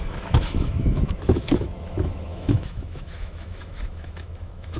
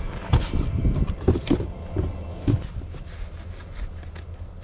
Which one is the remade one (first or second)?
first